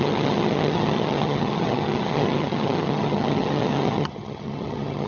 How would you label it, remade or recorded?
remade